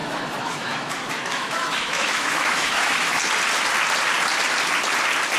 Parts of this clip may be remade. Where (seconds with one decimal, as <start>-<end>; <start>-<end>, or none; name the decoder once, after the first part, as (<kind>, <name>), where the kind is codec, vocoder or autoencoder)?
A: 0.0-3.2 (autoencoder, DAC-VAE)